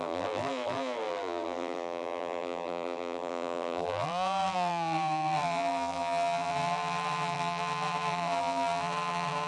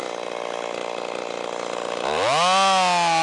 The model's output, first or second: first